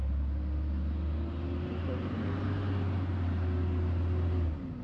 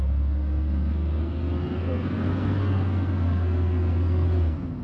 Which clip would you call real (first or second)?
first